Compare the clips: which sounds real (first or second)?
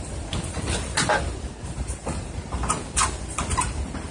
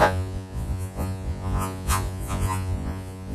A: first